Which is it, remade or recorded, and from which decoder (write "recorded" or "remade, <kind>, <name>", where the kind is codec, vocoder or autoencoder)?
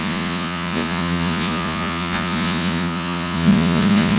remade, vocoder, Vocos